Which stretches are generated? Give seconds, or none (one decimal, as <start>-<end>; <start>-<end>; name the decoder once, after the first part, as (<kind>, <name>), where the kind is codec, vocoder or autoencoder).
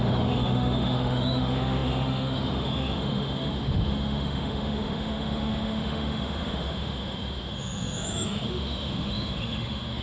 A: 0.0-10.0 (autoencoder, DAC-VAE)